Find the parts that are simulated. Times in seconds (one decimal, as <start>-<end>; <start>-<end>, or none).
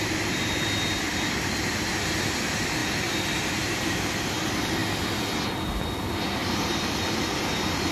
0.0-4.8; 5.4-7.9